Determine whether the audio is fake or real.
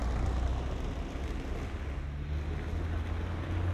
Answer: real